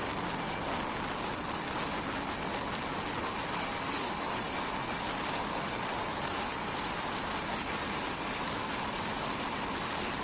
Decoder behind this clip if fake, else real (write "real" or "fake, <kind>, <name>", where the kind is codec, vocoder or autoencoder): real